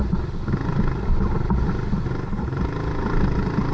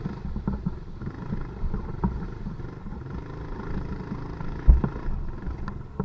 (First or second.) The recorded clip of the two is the first